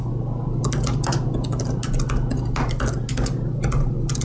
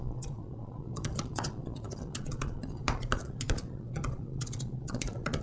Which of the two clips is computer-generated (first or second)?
second